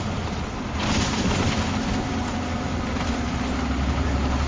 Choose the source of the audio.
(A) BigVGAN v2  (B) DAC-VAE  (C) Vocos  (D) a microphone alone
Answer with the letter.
D